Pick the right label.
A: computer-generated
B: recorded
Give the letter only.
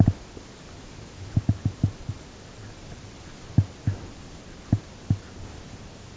B